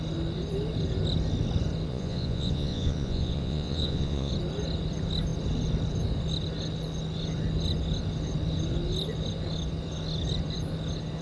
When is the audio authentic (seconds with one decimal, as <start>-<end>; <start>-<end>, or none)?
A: 0.0-1.9; 4.3-11.2